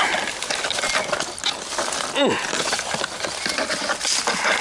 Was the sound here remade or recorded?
recorded